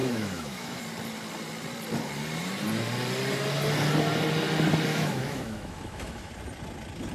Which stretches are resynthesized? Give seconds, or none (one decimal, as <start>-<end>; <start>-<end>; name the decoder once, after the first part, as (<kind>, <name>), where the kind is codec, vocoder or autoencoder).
0.0-0.8 (autoencoder, DAC-VAE); 4.9-6.3